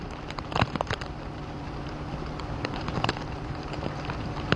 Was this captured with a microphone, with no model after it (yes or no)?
no